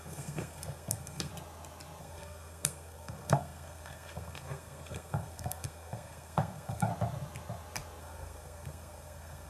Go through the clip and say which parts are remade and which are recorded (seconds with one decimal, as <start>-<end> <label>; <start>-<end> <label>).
0.0-1.3 remade; 1.3-2.0 recorded; 2.0-6.9 remade; 6.9-8.0 recorded; 8.0-9.5 remade